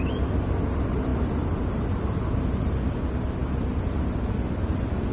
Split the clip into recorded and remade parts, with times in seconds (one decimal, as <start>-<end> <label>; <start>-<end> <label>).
0.0-5.1 recorded